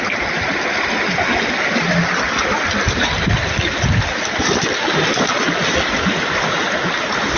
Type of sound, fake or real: real